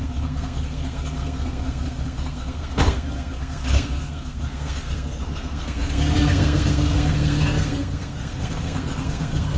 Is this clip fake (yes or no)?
yes